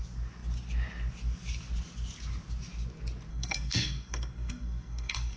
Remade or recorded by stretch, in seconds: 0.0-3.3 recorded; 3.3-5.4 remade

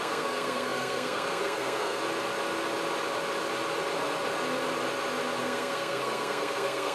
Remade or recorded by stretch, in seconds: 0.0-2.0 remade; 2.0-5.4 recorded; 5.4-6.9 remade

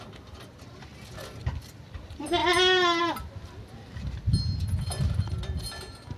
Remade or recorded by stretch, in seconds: 0.0-6.2 recorded

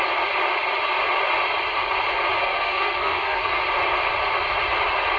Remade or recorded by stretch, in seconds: 0.0-2.4 recorded; 2.4-3.6 remade; 3.6-5.2 recorded

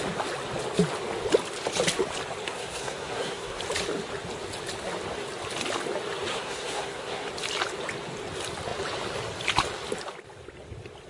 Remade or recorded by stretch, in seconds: 0.0-2.5 recorded; 2.5-3.6 remade; 3.6-6.3 recorded; 6.3-7.3 remade; 7.3-11.1 recorded